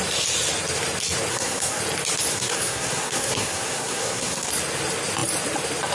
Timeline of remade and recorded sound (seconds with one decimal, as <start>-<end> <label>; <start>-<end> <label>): 0.0-1.3 recorded; 1.3-1.8 remade; 1.8-2.3 recorded; 2.3-4.5 remade; 4.5-5.9 recorded

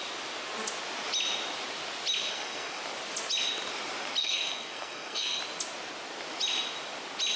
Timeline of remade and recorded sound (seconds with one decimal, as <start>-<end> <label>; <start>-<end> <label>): 0.0-2.2 recorded; 2.2-2.8 remade; 2.8-4.2 recorded; 4.2-5.4 remade; 5.4-7.4 recorded

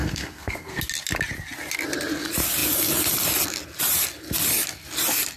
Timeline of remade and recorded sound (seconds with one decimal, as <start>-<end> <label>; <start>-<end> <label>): 0.0-0.8 remade; 0.8-5.4 recorded